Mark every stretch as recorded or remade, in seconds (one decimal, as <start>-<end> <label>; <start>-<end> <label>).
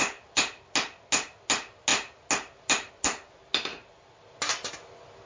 0.0-5.3 recorded